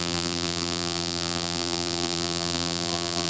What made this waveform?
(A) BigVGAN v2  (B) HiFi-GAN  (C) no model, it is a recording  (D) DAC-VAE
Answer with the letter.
A